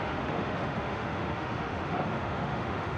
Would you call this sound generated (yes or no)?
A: yes